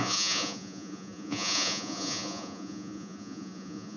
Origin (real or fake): fake